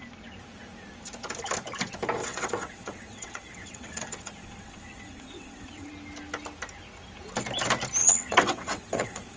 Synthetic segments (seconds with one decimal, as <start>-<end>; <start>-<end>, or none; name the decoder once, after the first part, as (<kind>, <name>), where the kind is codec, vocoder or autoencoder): 2.2-5.9 (vocoder, WaveNeXt); 8.0-9.4